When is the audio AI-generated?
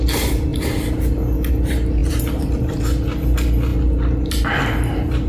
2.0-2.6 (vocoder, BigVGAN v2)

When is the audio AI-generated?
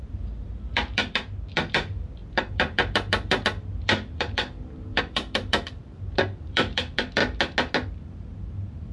0.0-7.2 (vocoder, BigVGAN v2); 8.0-8.9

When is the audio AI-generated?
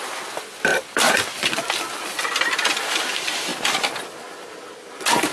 0.7-1.8 (vocoder, BigVGAN v2)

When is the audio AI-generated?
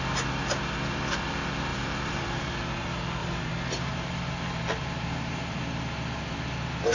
1.7-2.5 (vocoder, BigVGAN v2); 3.2-5.6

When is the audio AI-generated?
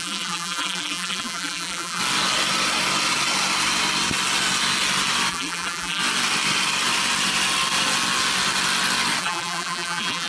0.0-2.0 (vocoder, BigVGAN v2); 5.3-6.0; 9.2-10.3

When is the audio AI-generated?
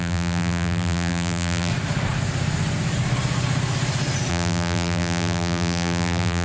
0.0-1.7 (vocoder, BigVGAN v2); 4.3-6.4